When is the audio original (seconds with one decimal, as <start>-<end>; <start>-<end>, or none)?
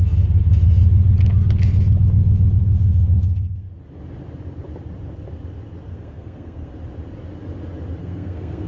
0.0-2.6; 3.7-5.9; 6.7-8.0